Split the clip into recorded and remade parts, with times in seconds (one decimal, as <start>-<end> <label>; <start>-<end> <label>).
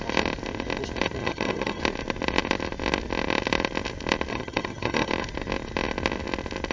0.0-1.2 recorded; 1.2-1.8 remade; 1.8-4.3 recorded; 4.3-5.1 remade; 5.1-6.7 recorded